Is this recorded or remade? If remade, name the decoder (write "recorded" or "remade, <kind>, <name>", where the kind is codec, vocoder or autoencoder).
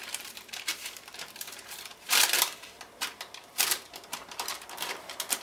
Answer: remade, vocoder, BigVGAN v2